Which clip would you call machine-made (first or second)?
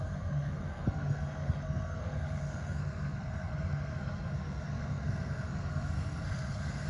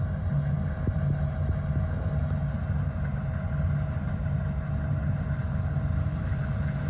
first